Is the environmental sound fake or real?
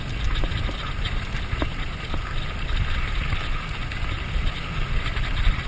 real